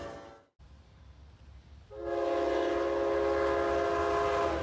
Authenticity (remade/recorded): recorded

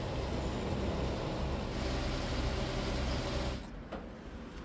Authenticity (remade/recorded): recorded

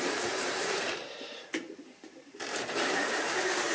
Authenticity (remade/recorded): remade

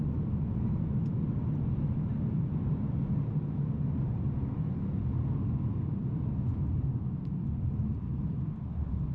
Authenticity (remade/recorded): recorded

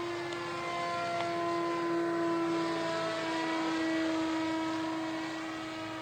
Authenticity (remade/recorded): recorded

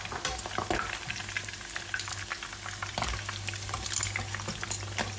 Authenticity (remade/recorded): recorded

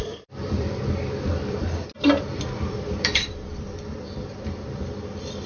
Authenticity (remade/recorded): remade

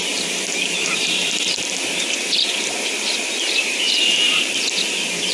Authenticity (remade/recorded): remade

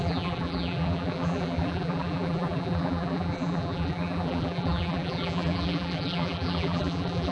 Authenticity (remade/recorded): remade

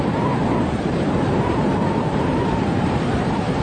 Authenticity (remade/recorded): remade